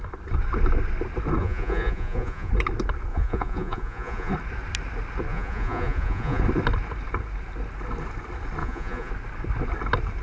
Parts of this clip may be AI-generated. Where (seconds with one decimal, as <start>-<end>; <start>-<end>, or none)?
1.4-2.5; 3.1-4.3; 5.3-6.4; 8.6-9.1

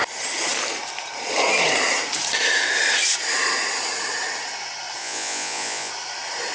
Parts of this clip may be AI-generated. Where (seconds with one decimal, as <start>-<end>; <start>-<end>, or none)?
5.0-5.9

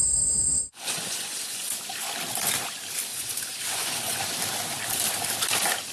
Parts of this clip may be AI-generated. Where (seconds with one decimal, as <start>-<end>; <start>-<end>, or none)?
0.7-1.7; 3.1-4.2